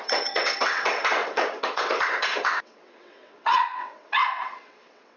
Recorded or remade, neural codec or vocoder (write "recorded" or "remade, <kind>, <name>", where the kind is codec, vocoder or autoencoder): remade, vocoder, WaveNeXt